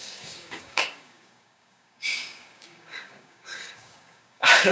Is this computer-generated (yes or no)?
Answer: yes